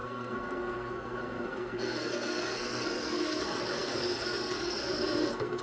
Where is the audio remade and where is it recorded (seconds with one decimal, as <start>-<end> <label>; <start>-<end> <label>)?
0.0-5.6 remade

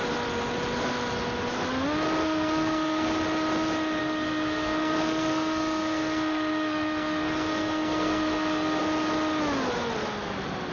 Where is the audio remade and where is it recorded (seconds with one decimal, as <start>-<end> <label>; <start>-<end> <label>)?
0.0-2.2 recorded; 2.2-3.1 remade; 3.1-4.0 recorded; 4.0-8.8 remade; 8.8-10.7 recorded

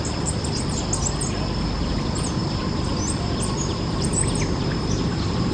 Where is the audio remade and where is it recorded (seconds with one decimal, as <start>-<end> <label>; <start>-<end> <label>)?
0.0-5.5 recorded

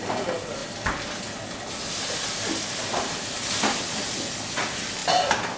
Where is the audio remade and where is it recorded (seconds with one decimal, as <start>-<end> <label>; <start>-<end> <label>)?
0.0-5.6 recorded

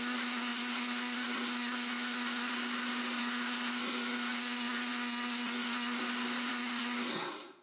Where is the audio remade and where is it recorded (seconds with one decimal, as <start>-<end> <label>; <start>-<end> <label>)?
0.0-2.5 remade; 2.5-3.2 recorded; 3.2-6.0 remade; 6.0-6.5 recorded; 6.5-7.6 remade

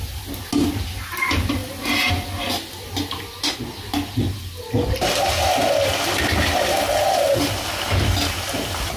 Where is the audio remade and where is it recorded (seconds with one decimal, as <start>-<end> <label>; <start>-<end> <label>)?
0.0-9.0 recorded

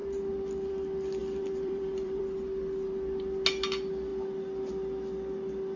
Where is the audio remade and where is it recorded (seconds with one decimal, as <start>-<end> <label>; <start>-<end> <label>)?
0.0-1.2 recorded; 1.2-2.2 remade; 2.2-5.8 recorded